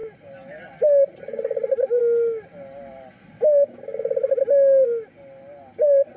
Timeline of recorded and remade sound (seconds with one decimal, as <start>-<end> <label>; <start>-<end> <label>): 0.0-6.2 recorded